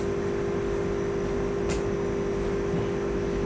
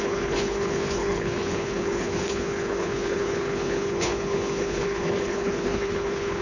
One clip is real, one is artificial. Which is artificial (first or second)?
second